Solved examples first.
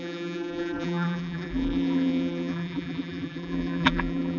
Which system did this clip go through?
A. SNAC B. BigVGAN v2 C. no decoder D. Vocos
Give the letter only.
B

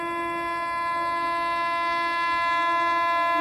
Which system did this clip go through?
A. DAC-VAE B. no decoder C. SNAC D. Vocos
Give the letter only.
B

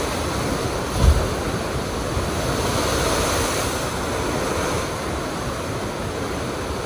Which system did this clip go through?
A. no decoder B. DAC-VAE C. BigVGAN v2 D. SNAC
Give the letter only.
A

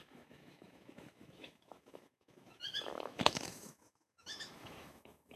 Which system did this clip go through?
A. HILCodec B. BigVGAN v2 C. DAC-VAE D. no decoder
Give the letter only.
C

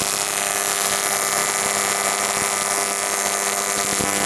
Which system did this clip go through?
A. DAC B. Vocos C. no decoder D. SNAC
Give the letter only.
C